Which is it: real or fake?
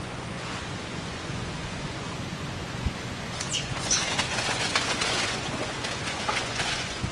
fake